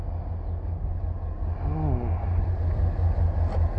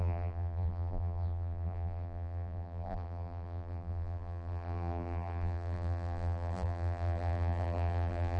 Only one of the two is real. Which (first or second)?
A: first